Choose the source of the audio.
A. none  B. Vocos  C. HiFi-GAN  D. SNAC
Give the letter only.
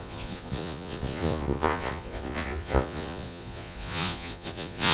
B